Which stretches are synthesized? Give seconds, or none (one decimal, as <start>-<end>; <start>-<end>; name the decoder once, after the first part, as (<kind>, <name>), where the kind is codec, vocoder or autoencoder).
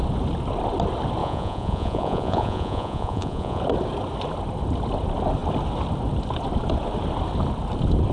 1.2-3.6 (vocoder, Vocos)